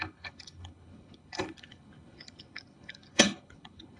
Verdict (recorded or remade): remade